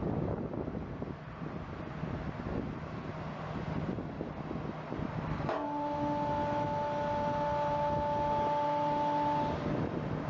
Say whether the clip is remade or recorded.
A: recorded